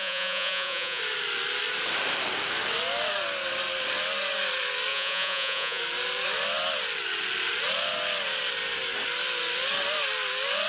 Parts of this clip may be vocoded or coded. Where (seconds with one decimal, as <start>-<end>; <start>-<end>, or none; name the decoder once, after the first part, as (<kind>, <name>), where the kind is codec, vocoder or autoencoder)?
0.0-1.0 (vocoder, Vocos); 4.9-5.8